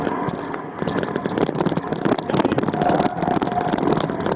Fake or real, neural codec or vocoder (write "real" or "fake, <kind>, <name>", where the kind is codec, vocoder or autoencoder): real